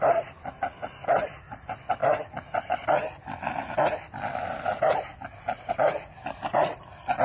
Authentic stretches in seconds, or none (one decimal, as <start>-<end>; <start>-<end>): 0.0-7.2